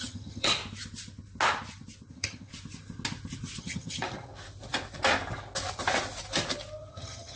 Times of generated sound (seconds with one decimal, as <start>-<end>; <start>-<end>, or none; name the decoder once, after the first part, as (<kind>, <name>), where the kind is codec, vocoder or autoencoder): 0.0-0.6 (vocoder, HiFi-GAN); 2.1-2.5; 3.6-4.3; 6.9-7.4